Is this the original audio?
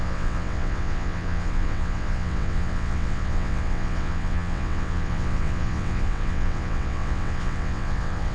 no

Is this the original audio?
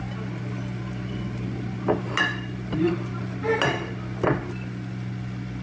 yes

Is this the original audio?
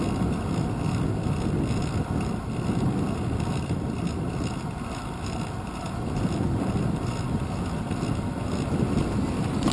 yes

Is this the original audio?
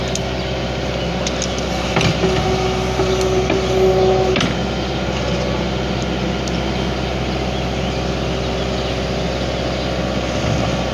yes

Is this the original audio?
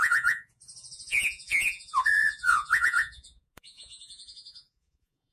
no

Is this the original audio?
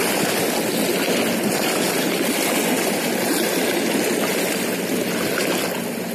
yes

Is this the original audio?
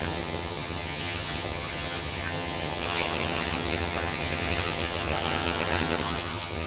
no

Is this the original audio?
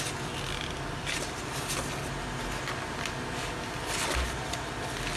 yes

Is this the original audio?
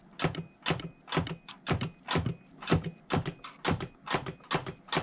yes